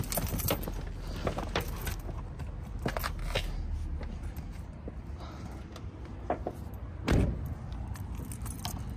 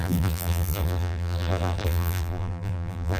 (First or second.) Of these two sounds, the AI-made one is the second